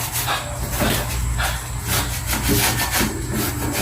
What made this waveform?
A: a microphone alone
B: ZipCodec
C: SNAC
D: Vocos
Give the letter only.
A